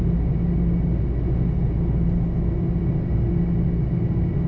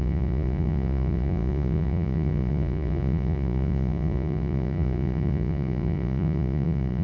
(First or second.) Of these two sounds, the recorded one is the first